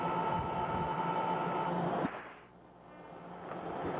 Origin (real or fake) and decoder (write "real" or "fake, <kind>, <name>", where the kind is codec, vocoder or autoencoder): real